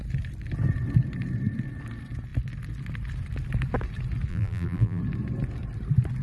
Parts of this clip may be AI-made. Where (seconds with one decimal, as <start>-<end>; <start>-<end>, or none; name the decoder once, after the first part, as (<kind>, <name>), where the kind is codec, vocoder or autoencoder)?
4.3-5.0 (vocoder, BigVGAN v2)